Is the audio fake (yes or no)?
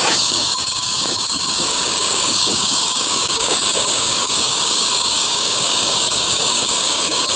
yes